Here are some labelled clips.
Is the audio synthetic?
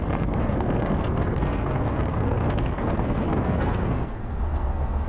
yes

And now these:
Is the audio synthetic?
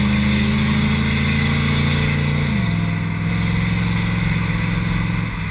no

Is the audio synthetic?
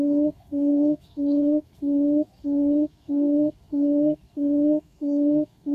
yes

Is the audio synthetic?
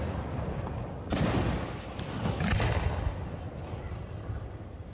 no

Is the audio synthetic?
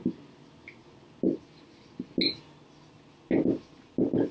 no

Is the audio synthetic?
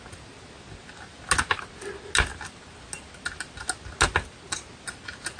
no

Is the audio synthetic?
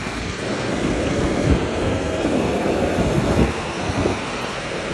yes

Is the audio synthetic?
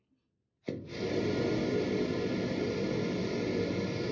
no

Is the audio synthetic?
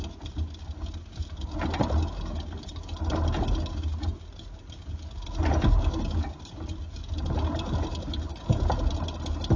no